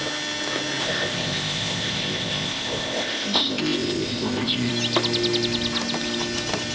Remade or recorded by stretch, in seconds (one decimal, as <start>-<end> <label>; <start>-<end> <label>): 0.0-0.8 recorded; 0.8-4.7 remade; 4.7-6.7 recorded